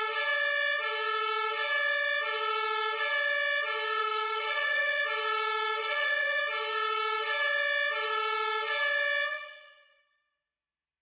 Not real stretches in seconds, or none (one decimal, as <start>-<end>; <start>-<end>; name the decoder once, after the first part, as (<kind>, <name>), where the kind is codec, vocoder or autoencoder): 4.0-5.0 (vocoder, Vocos); 5.8-6.4; 9.3-10.0